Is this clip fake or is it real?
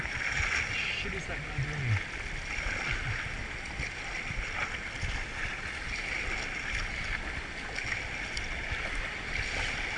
real